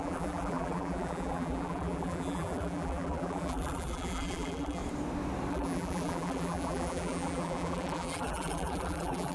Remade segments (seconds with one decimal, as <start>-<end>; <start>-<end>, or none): 0.0-4.8; 5.5-9.3